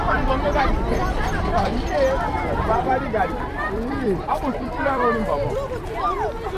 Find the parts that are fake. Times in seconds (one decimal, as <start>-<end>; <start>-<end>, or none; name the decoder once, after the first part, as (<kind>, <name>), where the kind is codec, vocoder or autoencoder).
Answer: 1.0-5.0 (vocoder, BigVGAN v2)